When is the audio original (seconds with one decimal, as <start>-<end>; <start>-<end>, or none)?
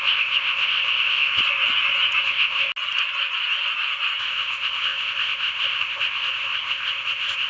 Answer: 1.4-2.2; 2.7-4.2